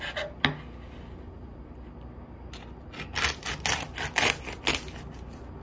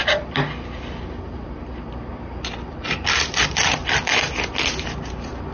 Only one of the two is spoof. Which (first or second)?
second